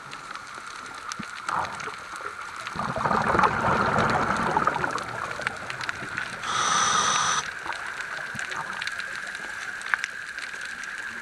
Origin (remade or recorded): recorded